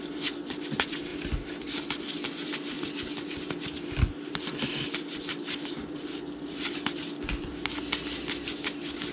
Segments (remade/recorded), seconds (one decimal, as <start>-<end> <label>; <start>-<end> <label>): 0.0-9.1 recorded

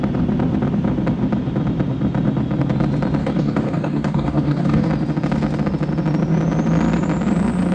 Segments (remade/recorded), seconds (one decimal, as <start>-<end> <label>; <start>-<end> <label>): 0.0-3.2 recorded; 3.2-4.9 remade; 4.9-7.7 recorded

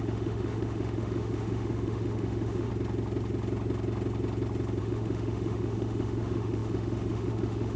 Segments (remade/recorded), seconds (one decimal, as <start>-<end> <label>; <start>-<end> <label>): 0.0-2.7 remade; 2.7-4.8 recorded; 4.8-7.8 remade

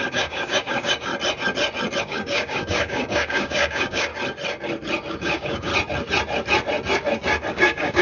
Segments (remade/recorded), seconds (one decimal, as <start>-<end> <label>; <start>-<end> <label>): 0.0-1.1 remade; 1.1-2.0 recorded; 2.0-4.1 remade; 4.1-5.1 recorded; 5.1-5.7 remade; 5.7-7.5 recorded; 7.5-8.0 remade

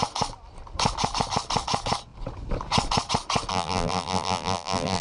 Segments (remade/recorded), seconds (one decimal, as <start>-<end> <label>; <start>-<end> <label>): 0.0-3.5 recorded; 3.5-5.0 remade

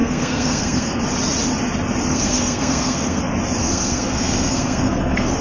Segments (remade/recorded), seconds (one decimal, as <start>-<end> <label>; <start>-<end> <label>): 0.0-1.0 remade; 1.0-2.1 recorded; 2.1-3.2 remade; 3.2-3.6 recorded; 3.6-5.4 remade

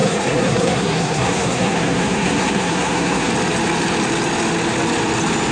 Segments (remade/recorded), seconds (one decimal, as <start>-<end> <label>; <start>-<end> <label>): 0.0-3.3 remade; 3.3-5.5 recorded